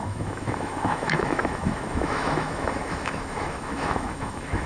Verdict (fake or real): fake